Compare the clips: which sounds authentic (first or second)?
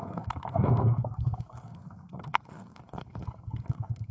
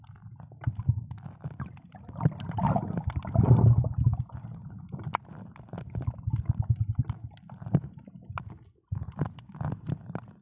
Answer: second